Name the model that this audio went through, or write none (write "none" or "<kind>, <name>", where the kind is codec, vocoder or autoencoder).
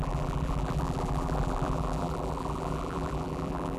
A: vocoder, BigVGAN v2